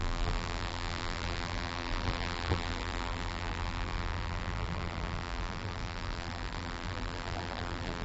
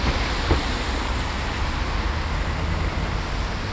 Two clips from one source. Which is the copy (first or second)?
first